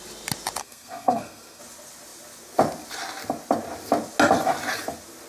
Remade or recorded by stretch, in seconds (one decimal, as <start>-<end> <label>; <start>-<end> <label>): 0.0-0.6 recorded; 0.6-1.6 remade; 1.6-5.3 recorded